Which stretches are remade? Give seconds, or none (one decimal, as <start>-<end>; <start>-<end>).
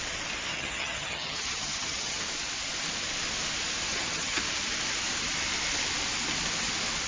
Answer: 0.5-2.2; 3.9-4.4